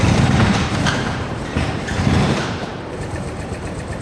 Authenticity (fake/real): fake